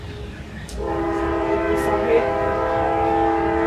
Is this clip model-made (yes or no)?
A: yes